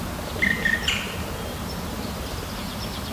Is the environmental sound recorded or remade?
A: recorded